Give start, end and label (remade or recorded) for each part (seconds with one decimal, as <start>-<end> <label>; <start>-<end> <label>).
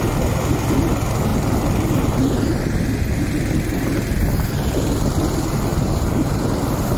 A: 0.0-5.7 recorded; 5.7-6.3 remade; 6.3-7.0 recorded